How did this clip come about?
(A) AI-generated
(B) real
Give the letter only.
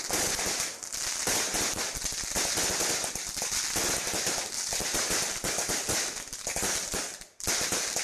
B